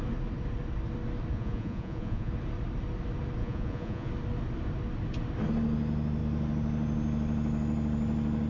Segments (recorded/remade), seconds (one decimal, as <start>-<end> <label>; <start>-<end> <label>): 0.0-1.3 recorded; 1.3-2.3 remade; 2.3-3.4 recorded; 3.4-4.1 remade; 4.1-8.5 recorded